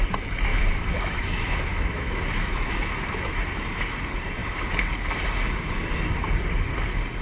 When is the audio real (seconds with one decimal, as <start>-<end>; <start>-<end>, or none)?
0.0-0.5; 3.4-7.2